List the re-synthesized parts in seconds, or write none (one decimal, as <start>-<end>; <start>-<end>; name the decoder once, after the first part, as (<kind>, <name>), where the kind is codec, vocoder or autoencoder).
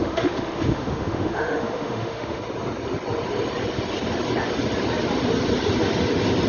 0.0-2.4 (autoencoder, DAC-VAE)